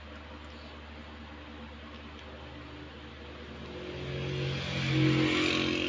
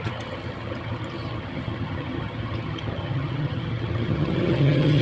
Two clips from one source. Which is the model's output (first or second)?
second